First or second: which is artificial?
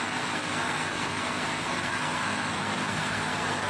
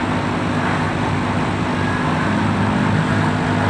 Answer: first